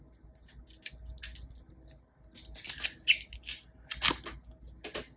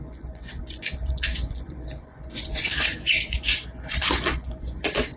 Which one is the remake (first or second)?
second